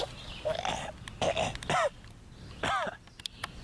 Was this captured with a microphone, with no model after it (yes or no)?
yes